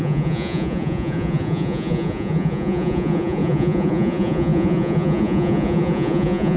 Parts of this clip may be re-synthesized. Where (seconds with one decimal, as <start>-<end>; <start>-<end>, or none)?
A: 0.0-6.6